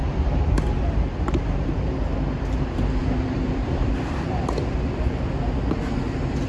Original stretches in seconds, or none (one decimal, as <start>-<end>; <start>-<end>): 1.8-3.0; 3.9-6.5